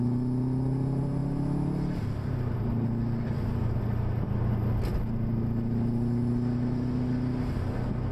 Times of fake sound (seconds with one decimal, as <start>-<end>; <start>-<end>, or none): none